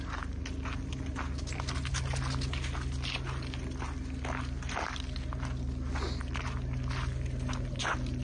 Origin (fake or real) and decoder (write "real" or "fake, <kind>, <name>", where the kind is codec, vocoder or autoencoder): real